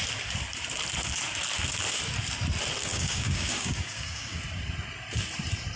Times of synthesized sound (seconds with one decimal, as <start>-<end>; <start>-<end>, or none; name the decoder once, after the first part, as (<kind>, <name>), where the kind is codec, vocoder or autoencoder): 2.8-4.4 (codec, DAC)